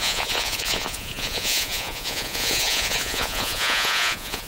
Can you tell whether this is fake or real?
fake